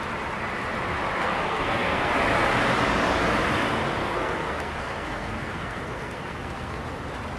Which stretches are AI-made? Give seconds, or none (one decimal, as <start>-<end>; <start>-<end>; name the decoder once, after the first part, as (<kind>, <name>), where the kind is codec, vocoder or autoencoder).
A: 1.2-2.1 (codec, SNAC); 4.0-6.8